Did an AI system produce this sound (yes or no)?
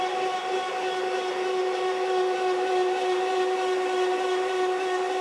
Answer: yes